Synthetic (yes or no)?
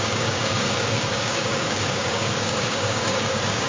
yes